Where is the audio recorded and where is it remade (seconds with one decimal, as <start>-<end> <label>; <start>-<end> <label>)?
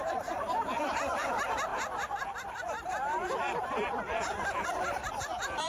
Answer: 0.0-5.7 remade